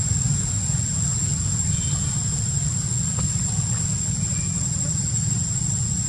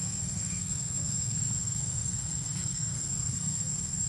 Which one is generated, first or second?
second